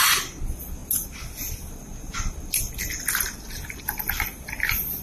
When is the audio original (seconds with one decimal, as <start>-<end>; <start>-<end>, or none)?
0.0-5.0

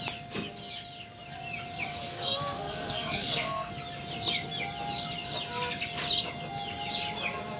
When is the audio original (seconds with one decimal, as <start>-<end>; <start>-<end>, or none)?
0.0-1.9; 3.7-7.6

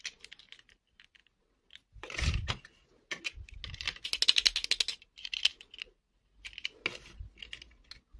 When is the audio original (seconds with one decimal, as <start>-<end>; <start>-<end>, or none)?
0.0-8.2